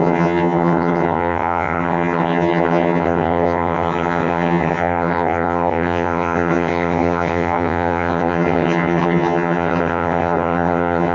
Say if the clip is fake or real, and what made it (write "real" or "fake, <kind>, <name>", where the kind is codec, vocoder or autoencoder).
fake, vocoder, HiFi-GAN